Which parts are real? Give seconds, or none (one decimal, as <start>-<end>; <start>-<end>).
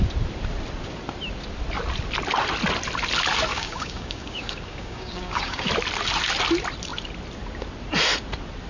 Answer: 0.0-3.5; 5.7-8.7